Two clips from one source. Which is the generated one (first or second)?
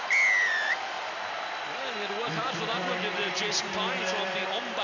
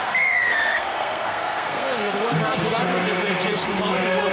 second